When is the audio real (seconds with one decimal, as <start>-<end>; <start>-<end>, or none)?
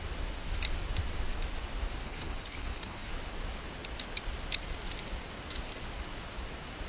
0.0-2.0; 3.1-6.9